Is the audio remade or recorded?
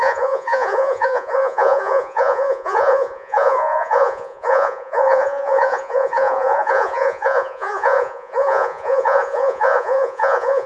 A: remade